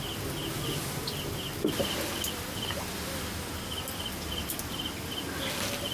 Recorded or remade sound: recorded